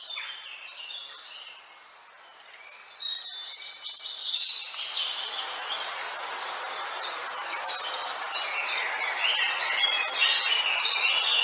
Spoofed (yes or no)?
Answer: no